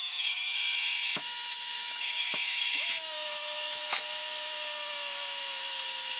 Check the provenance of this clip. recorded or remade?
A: remade